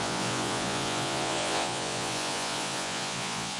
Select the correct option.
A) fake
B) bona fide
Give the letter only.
A